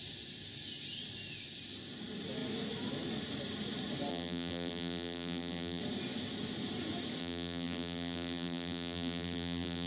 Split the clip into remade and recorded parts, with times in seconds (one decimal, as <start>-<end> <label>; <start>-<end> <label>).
0.0-4.1 recorded; 4.1-5.8 remade; 5.8-7.2 recorded; 7.2-9.9 remade